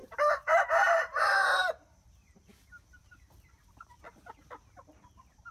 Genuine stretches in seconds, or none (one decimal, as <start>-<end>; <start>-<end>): 3.3-5.5